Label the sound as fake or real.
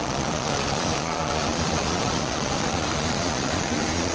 fake